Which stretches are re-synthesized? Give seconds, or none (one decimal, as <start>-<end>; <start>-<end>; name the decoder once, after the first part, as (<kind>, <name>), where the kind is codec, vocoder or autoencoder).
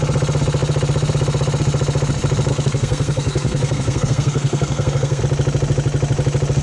2.5-5.2 (codec, SNAC)